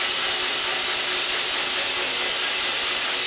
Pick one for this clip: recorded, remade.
recorded